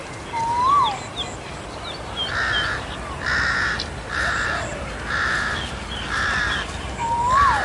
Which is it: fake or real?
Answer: real